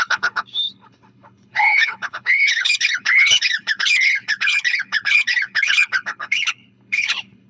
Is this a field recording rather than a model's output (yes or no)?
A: no